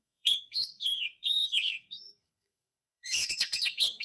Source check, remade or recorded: remade